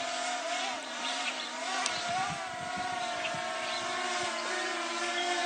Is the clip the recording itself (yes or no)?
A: no